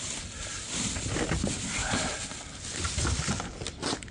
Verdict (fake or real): fake